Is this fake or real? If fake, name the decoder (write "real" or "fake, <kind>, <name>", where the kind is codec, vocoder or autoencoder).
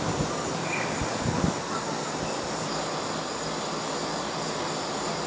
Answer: real